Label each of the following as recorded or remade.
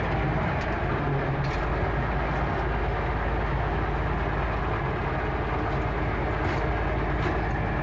recorded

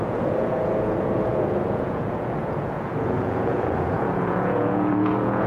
remade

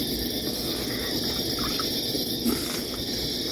recorded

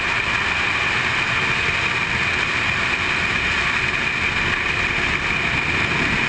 recorded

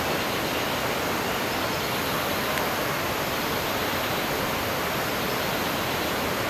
recorded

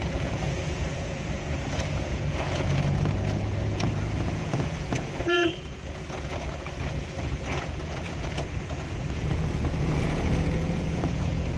remade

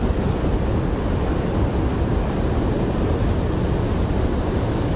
recorded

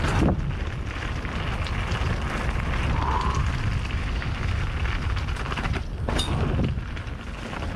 recorded